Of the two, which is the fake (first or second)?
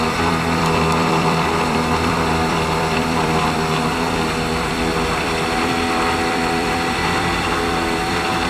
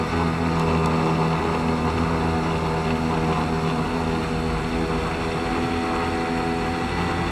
first